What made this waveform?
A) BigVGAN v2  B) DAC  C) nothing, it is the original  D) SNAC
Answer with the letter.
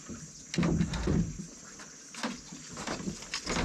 C